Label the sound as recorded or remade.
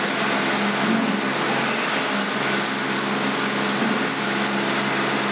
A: recorded